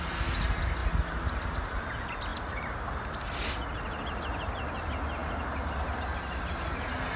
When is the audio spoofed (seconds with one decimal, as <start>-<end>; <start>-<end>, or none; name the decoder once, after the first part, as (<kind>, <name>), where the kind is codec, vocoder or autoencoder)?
none